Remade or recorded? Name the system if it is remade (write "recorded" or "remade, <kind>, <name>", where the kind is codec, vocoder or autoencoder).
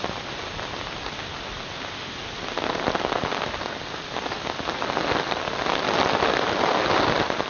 recorded